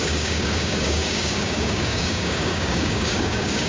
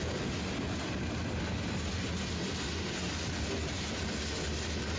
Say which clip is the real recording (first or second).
second